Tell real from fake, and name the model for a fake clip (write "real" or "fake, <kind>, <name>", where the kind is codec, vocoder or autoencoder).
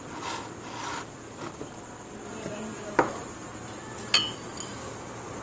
real